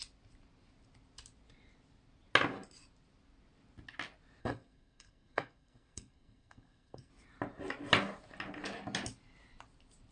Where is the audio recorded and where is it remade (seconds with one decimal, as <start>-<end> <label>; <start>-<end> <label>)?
0.0-4.4 recorded; 4.4-7.1 remade; 7.1-10.1 recorded